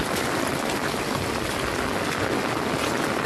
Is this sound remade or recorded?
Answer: recorded